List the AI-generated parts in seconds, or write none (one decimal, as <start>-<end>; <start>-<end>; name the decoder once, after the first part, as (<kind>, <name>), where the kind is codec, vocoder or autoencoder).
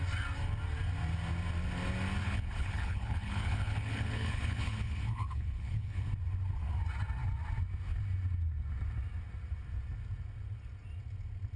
2.2-6.1 (codec, HILCodec)